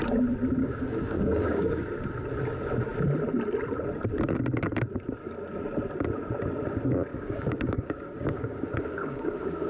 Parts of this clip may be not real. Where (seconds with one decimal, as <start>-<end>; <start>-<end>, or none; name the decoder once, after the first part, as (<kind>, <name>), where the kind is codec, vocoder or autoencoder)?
0.6-1.8 (codec, DAC); 7.1-9.7

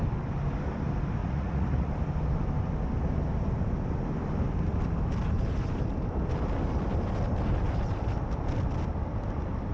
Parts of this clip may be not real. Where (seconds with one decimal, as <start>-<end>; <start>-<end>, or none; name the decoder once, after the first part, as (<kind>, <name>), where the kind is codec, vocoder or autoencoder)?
1.2-1.9 (vocoder, Vocos)

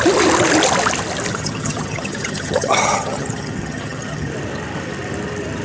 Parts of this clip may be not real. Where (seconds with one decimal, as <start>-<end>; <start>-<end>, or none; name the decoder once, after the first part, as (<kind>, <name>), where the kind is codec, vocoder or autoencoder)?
1.3-4.3 (vocoder, HiFi-GAN)

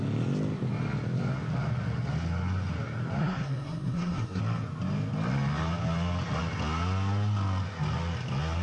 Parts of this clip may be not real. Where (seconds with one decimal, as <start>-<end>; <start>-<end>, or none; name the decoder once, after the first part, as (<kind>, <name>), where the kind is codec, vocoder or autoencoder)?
3.2-4.4 (codec, SNAC)

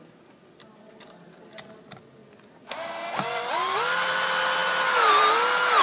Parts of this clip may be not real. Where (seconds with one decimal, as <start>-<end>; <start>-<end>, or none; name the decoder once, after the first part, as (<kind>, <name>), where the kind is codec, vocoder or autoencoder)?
none

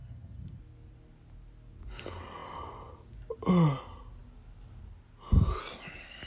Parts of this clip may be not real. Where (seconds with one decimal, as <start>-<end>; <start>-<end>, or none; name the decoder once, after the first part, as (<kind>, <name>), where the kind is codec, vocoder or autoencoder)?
0.0-0.6 (vocoder, HiFi-GAN)

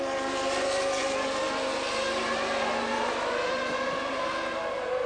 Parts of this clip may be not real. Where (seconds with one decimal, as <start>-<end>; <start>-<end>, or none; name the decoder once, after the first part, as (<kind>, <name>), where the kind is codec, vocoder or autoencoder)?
none